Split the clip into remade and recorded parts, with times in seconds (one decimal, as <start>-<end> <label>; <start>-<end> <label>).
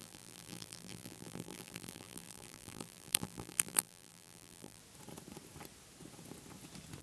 0.0-4.8 remade; 4.8-7.0 recorded